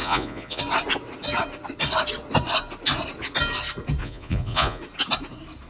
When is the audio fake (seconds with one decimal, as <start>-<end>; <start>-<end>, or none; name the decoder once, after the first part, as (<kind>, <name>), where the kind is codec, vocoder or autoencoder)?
0.0-0.6 (vocoder, Vocos); 4.0-4.8

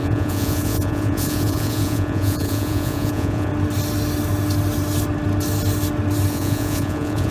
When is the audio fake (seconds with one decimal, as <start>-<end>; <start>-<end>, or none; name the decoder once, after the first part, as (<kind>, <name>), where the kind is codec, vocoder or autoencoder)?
0.0-3.5 (vocoder, Vocos); 6.3-7.3

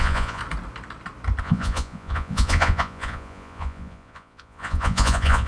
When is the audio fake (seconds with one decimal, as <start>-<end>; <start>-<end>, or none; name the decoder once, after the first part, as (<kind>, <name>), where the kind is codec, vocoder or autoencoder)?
0.0-0.4 (vocoder, Vocos); 1.4-5.5

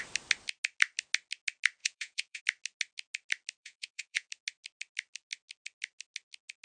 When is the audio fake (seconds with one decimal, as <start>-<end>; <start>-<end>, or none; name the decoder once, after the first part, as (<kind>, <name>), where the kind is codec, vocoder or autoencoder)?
1.8-2.4 (vocoder, Vocos); 3.6-4.3